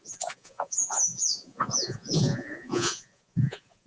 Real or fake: fake